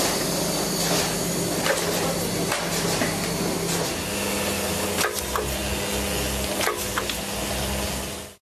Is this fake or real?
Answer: real